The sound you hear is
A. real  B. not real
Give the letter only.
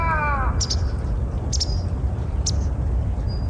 A